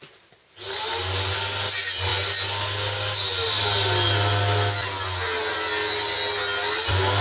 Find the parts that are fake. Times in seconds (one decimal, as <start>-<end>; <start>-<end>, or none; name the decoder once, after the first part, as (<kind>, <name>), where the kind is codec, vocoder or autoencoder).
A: none